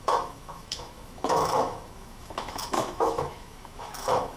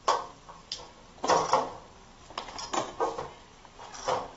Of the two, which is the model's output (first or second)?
first